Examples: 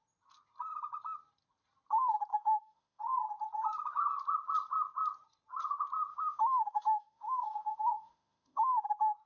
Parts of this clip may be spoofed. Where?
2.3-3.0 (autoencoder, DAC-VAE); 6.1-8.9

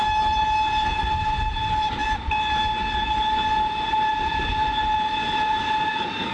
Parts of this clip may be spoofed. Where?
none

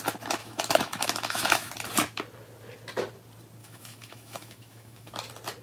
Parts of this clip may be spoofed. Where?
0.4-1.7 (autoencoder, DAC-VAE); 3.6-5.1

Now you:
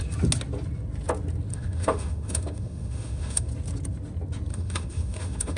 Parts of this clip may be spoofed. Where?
1.5-3.5 (autoencoder, DAC-VAE); 4.5-5.6

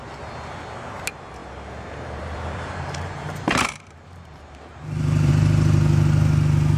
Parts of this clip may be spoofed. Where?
1.4-5.3 (vocoder, BigVGAN v2)